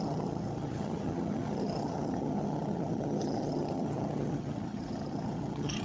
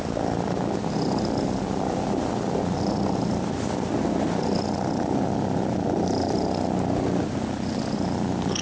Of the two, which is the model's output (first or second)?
first